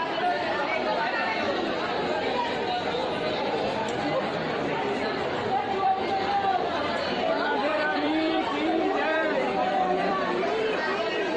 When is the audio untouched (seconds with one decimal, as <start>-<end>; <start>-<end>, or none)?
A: none